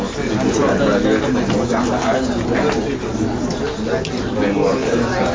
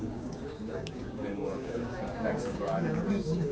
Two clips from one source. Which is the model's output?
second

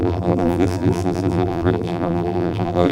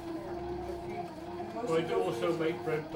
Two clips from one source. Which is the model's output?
first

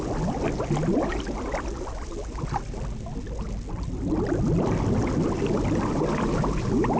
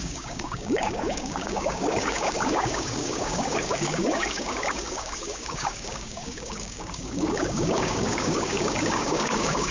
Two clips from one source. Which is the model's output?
second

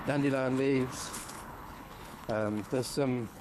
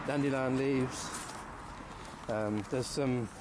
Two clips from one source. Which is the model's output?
first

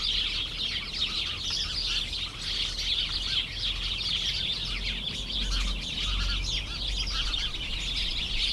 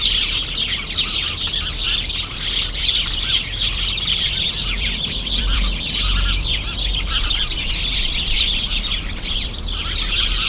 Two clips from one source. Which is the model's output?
second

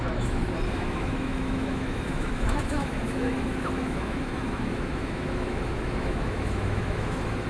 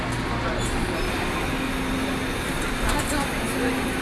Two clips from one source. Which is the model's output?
first